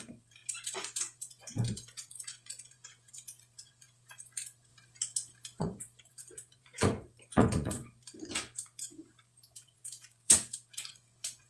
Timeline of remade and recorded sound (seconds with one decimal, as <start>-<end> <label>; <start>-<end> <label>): 0.0-4.7 remade; 4.7-5.6 recorded; 5.6-11.5 remade